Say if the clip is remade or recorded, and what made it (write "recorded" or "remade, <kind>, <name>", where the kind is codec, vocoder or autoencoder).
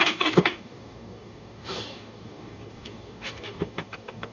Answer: remade, codec, DAC